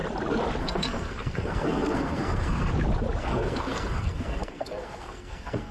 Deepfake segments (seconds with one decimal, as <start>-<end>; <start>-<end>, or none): 0.6-2.7; 3.2-5.7